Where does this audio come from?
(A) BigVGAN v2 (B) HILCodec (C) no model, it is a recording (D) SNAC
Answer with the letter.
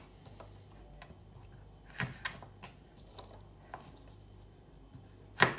C